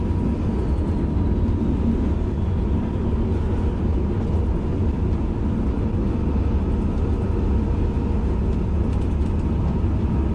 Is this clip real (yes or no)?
yes